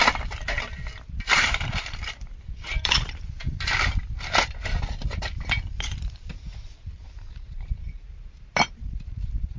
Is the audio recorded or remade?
remade